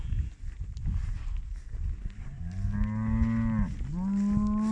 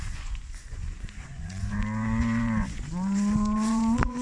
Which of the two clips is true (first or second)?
first